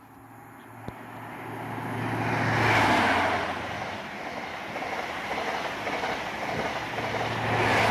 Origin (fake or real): real